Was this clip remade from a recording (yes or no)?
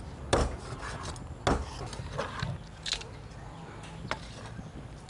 no